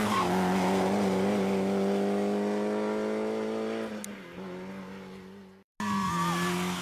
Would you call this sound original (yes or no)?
yes